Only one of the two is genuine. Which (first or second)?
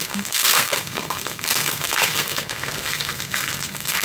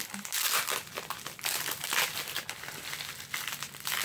second